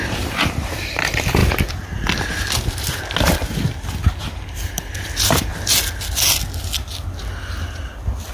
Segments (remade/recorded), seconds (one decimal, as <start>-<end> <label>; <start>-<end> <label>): 0.0-1.4 remade; 1.4-4.2 recorded; 4.2-5.5 remade; 5.5-8.3 recorded